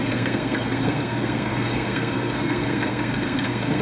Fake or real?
fake